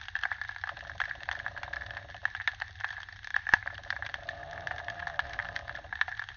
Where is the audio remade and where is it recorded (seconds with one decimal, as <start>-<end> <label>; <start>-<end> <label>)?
0.0-3.3 recorded; 3.3-6.0 remade; 6.0-6.4 recorded